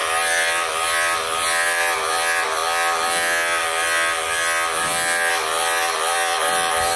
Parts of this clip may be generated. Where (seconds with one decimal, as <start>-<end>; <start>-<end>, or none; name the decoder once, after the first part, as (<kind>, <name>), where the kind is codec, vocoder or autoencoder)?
0.0-2.6 (vocoder, BigVGAN v2); 5.3-7.0